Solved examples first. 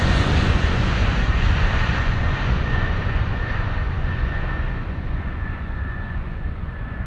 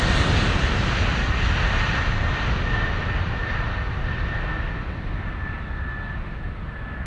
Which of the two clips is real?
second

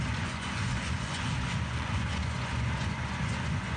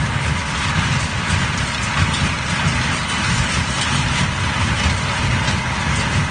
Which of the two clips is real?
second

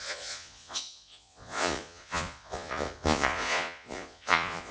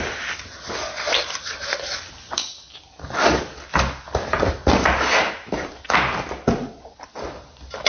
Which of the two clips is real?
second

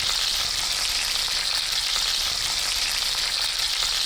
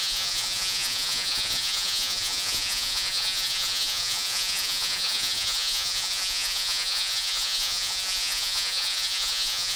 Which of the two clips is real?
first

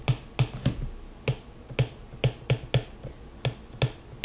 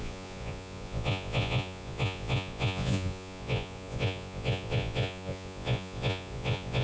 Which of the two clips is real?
first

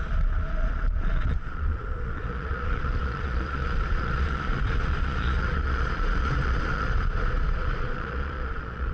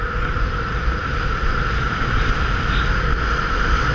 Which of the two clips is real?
second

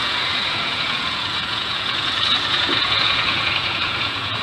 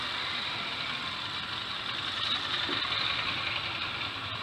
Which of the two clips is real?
second